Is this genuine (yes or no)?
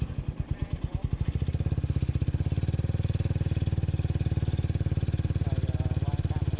yes